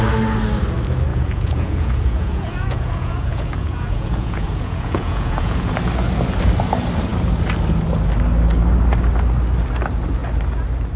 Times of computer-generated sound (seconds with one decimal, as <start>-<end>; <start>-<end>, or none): 1.1-5.7